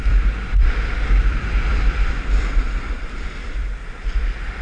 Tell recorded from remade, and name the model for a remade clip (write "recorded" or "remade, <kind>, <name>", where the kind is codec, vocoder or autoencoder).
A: remade, vocoder, BigVGAN v2